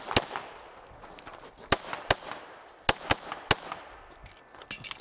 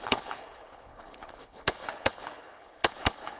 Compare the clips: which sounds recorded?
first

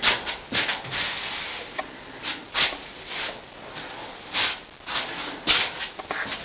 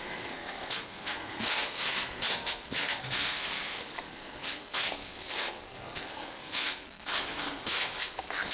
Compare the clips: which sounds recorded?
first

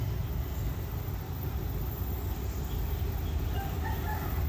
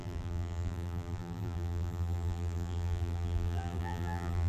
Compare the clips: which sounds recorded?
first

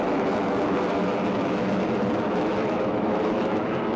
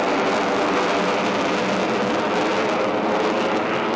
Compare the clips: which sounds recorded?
second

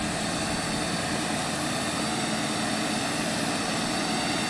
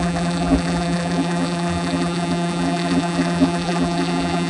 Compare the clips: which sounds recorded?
first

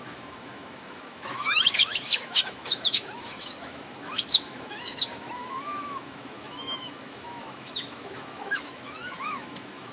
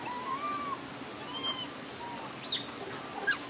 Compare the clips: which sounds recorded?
second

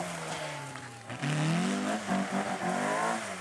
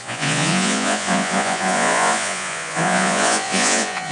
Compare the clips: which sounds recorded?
first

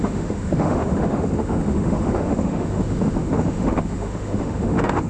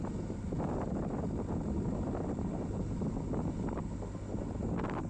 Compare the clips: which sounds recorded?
second